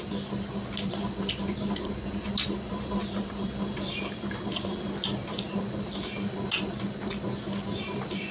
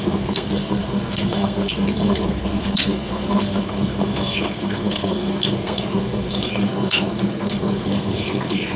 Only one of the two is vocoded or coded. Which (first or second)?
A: second